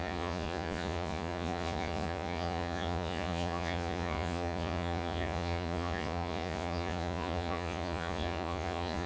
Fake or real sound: fake